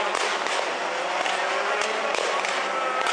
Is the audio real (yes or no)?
yes